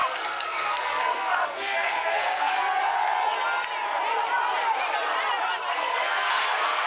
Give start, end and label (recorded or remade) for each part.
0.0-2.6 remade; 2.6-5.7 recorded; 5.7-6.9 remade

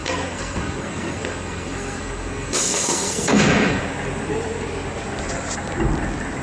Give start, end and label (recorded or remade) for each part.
0.0-3.8 remade; 3.8-6.4 recorded

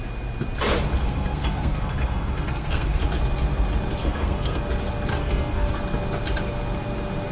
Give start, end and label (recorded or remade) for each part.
0.0-1.0 recorded; 1.0-3.0 remade; 3.0-4.0 recorded; 4.0-4.6 remade; 4.6-5.1 recorded; 5.1-5.7 remade; 5.7-7.3 recorded

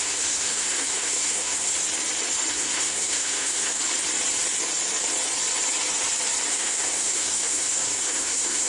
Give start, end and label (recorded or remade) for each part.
0.0-1.7 remade; 1.7-2.5 recorded; 2.5-3.8 remade; 3.8-6.5 recorded; 6.5-8.7 remade